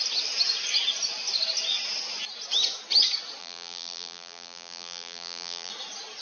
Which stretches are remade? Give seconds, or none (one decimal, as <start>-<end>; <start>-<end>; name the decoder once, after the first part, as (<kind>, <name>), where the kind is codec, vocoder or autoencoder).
3.4-5.7 (vocoder, BigVGAN v2)